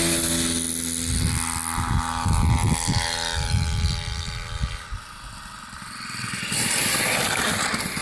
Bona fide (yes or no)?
yes